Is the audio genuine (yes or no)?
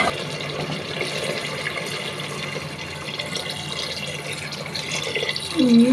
yes